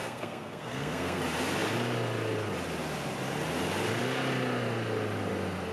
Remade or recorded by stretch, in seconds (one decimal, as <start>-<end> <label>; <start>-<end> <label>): 0.0-1.2 remade; 1.2-5.7 recorded